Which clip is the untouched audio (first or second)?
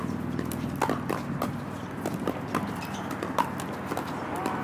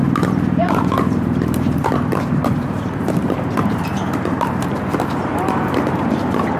first